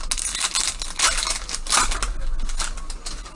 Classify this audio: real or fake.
real